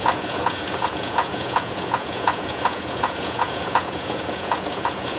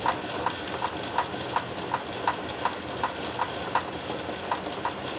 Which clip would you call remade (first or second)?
first